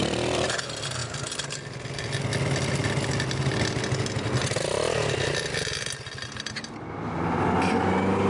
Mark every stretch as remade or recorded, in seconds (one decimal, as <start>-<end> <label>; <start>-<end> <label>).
0.0-8.3 recorded